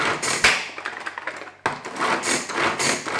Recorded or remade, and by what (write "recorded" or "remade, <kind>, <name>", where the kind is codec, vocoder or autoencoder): recorded